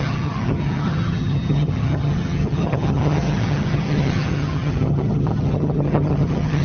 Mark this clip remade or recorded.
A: remade